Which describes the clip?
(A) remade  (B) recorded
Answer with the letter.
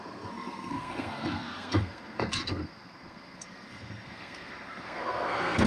A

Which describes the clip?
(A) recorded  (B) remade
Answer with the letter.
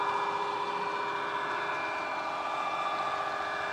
A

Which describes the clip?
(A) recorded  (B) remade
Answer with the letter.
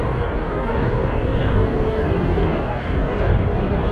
B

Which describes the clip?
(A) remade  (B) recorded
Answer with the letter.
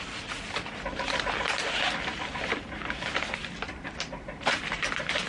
A